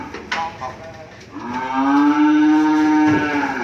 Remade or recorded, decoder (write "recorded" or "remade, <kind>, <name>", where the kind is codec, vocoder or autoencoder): recorded